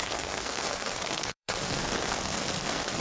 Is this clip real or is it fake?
fake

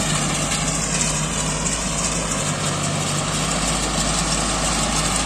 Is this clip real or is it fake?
real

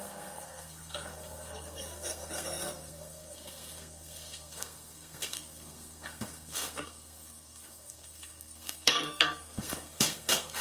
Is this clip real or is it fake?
fake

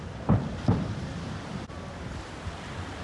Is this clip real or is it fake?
fake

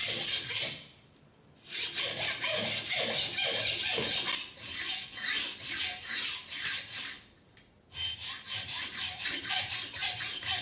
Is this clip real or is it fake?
real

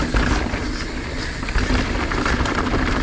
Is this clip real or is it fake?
real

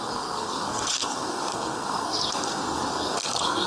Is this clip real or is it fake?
fake